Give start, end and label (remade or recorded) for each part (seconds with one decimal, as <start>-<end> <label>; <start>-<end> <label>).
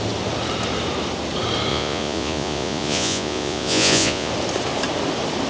0.0-1.7 recorded; 1.7-4.3 remade; 4.3-5.5 recorded